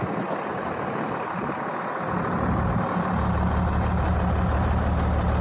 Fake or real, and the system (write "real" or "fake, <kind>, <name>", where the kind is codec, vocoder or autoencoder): real